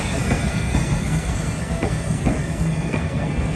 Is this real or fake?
fake